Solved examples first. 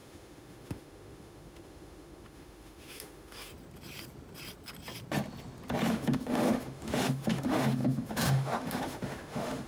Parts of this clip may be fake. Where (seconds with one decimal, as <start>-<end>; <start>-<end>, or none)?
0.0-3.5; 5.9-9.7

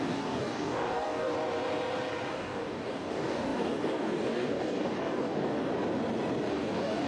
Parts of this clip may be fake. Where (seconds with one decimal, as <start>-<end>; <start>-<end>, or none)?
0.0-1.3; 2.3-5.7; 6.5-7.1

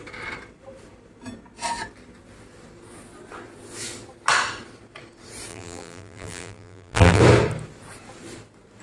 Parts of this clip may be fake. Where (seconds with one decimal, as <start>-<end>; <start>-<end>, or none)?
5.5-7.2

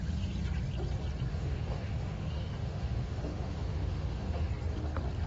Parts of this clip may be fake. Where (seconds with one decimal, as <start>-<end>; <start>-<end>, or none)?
1.3-4.5